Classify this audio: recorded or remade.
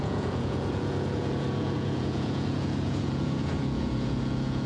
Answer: remade